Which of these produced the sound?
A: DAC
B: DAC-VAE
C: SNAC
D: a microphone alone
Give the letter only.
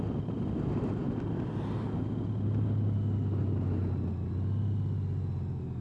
D